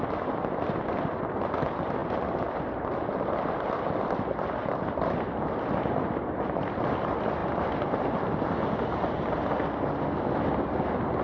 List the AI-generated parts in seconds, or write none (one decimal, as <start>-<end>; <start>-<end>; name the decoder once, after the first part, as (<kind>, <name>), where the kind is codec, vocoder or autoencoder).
none